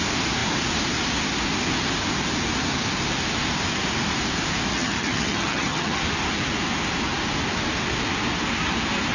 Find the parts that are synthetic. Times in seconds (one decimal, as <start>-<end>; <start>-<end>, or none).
4.7-6.0